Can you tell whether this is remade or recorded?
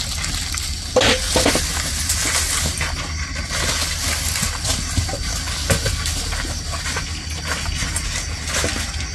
recorded